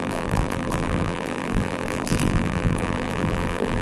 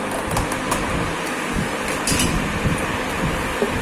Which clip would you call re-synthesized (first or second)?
first